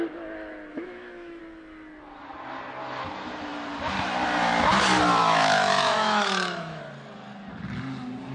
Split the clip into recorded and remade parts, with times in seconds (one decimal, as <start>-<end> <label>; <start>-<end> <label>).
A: 0.0-0.7 recorded; 0.7-1.4 remade; 1.4-5.2 recorded; 5.2-6.8 remade; 6.8-8.3 recorded